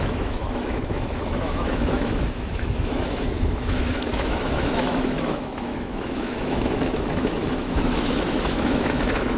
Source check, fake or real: fake